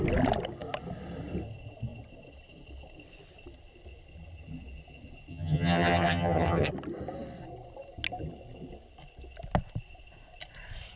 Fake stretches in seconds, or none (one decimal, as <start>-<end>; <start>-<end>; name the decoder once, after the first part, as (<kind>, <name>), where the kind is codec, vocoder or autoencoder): 5.3-6.7 (vocoder, HiFi-GAN)